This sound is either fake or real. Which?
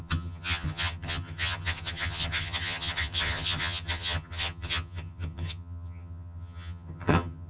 fake